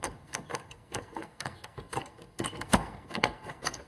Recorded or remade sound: remade